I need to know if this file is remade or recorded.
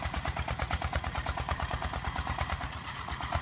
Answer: remade